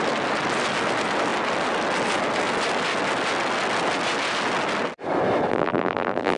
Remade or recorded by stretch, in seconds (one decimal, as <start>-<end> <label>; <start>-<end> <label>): 0.0-5.5 recorded; 5.5-6.4 remade